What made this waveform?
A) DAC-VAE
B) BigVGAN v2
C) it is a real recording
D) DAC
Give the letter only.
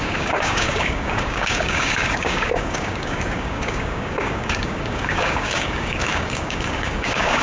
D